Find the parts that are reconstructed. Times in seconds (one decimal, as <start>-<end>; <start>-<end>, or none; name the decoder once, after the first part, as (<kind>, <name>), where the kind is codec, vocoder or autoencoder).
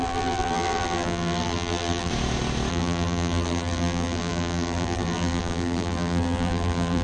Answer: 0.0-2.1 (vocoder, BigVGAN v2); 2.7-7.0